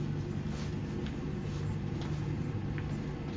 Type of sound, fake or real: real